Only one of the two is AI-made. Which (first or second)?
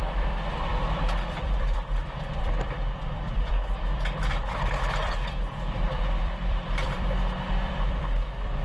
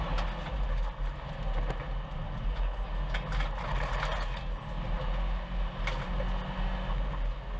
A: first